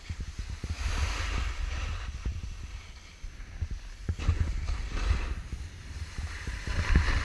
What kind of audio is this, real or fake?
real